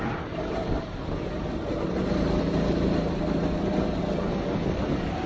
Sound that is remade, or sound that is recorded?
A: recorded